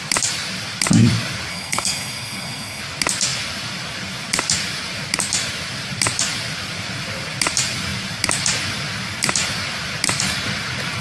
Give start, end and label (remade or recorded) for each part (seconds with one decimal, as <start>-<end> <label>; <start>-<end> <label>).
0.0-1.5 recorded; 1.5-2.8 remade; 2.8-11.0 recorded